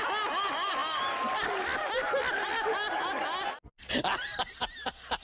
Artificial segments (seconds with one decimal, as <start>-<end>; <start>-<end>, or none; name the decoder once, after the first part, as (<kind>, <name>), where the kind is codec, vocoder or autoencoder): none